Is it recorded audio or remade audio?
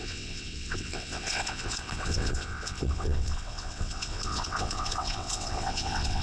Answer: remade